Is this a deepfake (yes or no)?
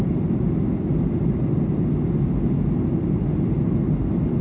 no